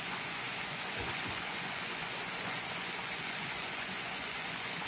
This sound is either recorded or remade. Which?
remade